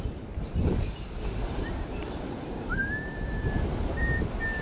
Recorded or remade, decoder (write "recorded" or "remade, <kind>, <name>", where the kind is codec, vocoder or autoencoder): remade, vocoder, BigVGAN v2